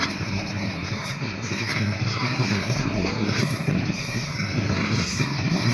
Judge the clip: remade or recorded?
remade